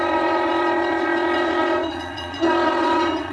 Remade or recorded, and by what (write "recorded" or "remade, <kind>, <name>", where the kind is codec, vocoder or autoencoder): remade, vocoder, Vocos